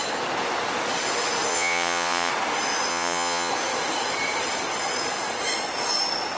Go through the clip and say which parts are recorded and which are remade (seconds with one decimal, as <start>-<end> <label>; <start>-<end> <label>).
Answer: 0.0-1.5 recorded; 1.5-2.3 remade; 2.3-2.9 recorded; 2.9-3.5 remade; 3.5-6.4 recorded